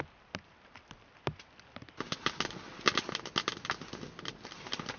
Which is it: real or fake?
real